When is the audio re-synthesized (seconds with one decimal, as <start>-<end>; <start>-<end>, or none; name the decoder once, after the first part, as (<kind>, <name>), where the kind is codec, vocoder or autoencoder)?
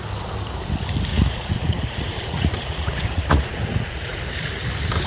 1.1-4.2 (vocoder, Vocos)